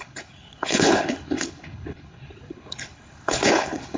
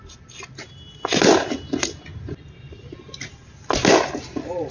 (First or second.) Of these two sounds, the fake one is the first